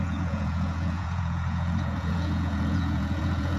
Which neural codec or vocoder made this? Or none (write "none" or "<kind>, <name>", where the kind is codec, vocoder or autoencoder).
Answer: vocoder, Vocos